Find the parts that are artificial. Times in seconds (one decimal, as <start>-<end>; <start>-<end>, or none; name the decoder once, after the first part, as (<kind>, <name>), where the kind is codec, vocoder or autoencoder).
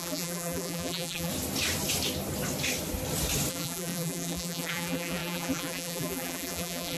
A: 0.0-1.3 (vocoder, BigVGAN v2); 3.5-7.0